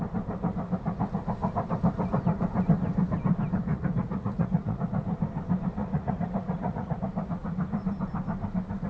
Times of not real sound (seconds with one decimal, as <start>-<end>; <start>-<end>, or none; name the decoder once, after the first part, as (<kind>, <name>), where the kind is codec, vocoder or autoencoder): 3.7-4.8 (vocoder, Vocos); 5.8-7.0